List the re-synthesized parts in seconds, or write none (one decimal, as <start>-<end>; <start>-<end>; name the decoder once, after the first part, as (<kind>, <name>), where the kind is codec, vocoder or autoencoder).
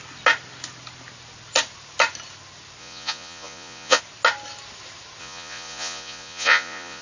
2.8-4.0 (vocoder, Vocos); 5.2-7.0